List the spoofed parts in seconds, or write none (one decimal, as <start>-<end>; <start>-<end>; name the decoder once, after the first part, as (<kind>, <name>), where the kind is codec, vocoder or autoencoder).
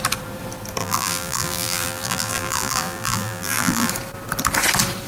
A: 0.8-3.9 (vocoder, BigVGAN v2)